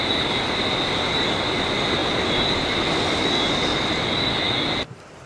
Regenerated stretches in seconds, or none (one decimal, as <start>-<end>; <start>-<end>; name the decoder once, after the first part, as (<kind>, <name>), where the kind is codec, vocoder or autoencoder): none